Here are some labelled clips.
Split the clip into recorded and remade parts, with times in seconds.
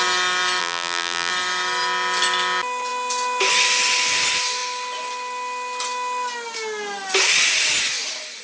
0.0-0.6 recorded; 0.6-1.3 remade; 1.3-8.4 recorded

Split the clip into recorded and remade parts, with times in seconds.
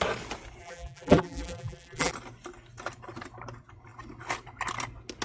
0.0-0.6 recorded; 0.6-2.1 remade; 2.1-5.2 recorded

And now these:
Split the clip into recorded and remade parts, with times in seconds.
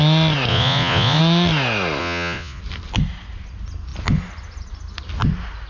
0.0-0.5 recorded; 0.5-1.2 remade; 1.2-2.0 recorded; 2.0-2.6 remade; 2.6-5.7 recorded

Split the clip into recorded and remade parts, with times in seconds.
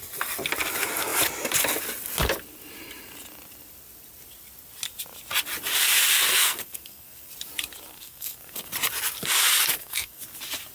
0.0-6.3 recorded; 6.3-7.3 remade; 7.3-7.9 recorded; 7.9-8.7 remade; 8.7-9.7 recorded; 9.7-10.2 remade; 10.2-10.7 recorded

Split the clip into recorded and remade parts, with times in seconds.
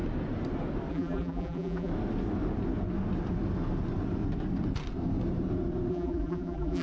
0.0-0.9 recorded; 0.9-1.9 remade; 1.9-5.9 recorded; 5.9-6.8 remade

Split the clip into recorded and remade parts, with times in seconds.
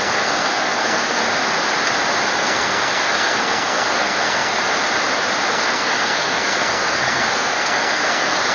0.0-1.2 remade; 1.2-2.4 recorded; 2.4-4.6 remade; 4.6-5.5 recorded; 5.5-8.5 remade